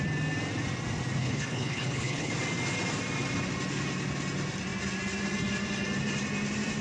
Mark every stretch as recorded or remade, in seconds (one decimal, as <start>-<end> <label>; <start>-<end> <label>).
0.0-1.2 recorded; 1.2-2.3 remade; 2.3-6.8 recorded